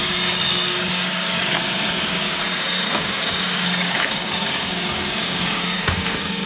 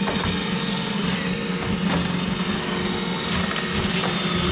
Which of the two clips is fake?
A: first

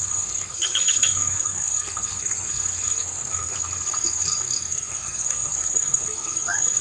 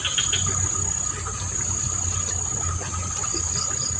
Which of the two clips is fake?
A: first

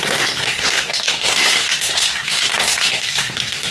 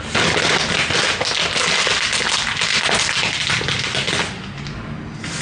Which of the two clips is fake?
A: first